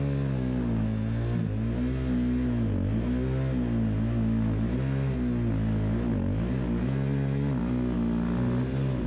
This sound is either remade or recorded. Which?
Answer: recorded